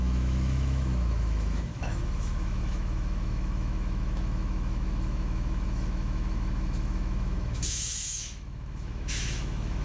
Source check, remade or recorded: remade